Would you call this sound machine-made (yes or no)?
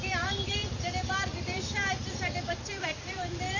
yes